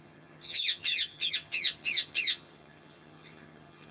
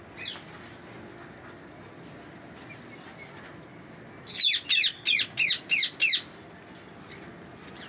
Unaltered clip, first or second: second